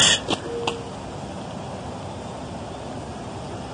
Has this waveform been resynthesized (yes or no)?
no